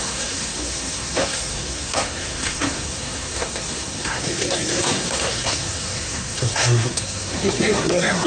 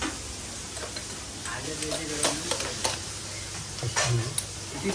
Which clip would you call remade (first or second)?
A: first